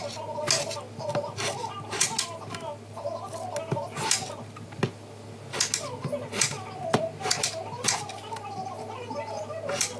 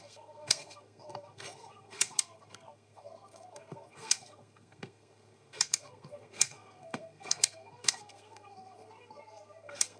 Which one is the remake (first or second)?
second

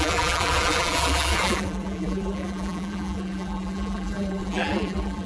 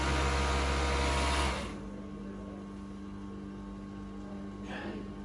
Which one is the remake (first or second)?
first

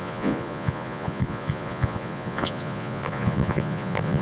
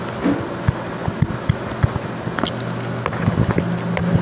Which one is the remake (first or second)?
first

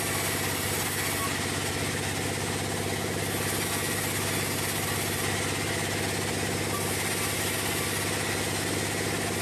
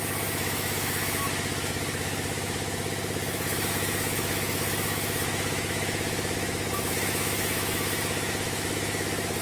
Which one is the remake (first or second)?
second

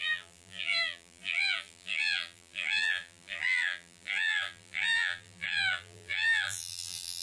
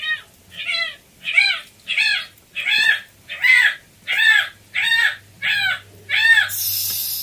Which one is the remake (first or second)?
first